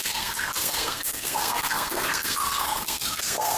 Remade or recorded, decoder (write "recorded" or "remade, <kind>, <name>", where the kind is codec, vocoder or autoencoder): remade, codec, SNAC